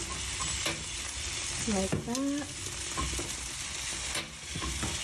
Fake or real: real